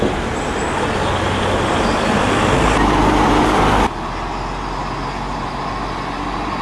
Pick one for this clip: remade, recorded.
recorded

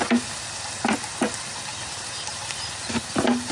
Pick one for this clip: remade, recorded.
recorded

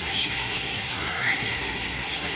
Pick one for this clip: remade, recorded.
remade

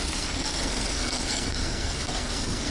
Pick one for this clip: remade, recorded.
remade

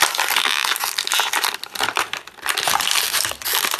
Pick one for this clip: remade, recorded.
recorded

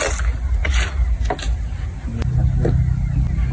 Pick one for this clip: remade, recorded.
recorded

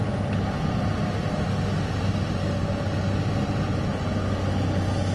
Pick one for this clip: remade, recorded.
recorded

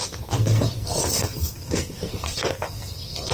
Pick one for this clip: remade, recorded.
remade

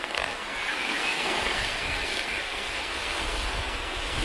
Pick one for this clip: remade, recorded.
remade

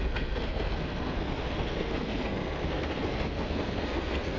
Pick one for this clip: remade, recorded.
remade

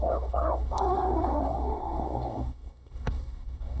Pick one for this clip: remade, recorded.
remade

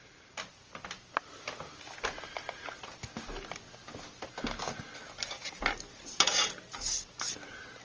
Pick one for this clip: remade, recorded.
recorded